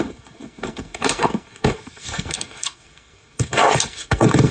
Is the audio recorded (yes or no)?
no